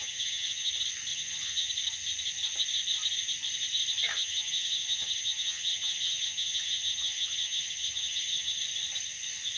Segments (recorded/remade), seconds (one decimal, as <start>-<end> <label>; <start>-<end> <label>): 0.0-0.7 remade; 0.7-1.1 recorded; 1.1-1.7 remade; 1.7-4.1 recorded; 4.1-8.6 remade; 8.6-9.6 recorded